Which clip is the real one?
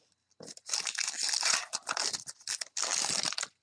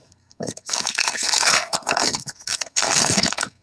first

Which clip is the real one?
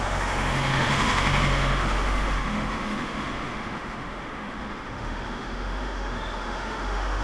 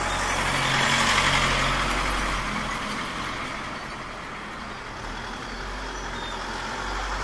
second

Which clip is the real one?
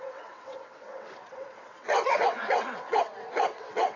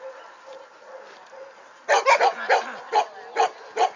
second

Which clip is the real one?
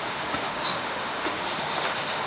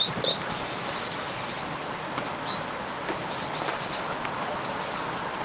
second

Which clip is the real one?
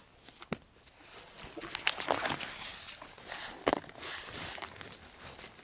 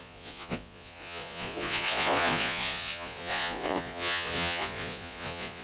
first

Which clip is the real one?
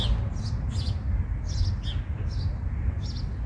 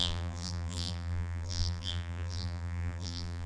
first